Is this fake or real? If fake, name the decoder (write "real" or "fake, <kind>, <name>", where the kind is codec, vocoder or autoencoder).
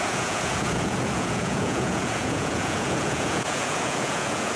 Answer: fake, vocoder, Vocos